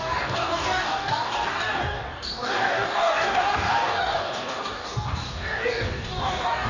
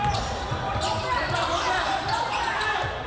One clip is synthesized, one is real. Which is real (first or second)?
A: second